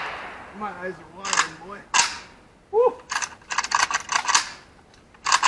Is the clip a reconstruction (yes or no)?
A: no